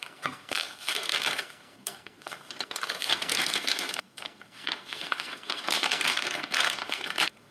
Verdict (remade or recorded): remade